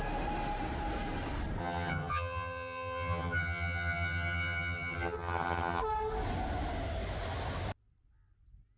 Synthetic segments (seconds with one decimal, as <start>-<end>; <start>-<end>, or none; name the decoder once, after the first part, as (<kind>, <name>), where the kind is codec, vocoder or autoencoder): 1.6-5.8 (vocoder, HiFi-GAN)